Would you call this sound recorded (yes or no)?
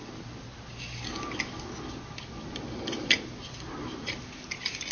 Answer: yes